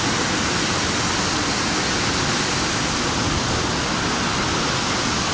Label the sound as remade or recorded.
recorded